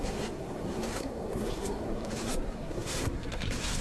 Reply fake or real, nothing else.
fake